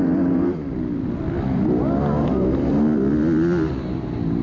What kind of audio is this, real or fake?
real